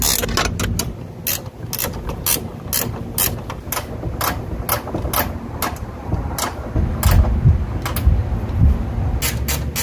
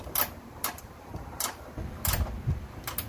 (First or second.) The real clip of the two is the first